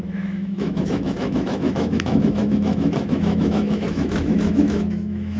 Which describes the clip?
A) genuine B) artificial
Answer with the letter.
B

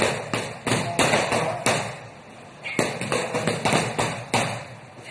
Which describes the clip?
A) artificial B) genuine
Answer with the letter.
B